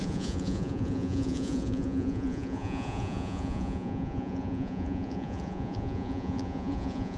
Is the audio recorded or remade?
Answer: remade